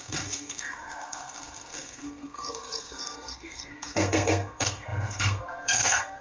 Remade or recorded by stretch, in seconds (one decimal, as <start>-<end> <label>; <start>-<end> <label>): 0.0-6.2 remade